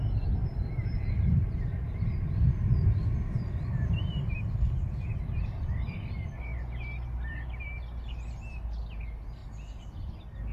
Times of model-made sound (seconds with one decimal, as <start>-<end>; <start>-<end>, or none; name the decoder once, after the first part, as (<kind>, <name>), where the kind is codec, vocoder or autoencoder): 0.4-5.2 (vocoder, BigVGAN v2); 6.5-9.0; 9.4-10.1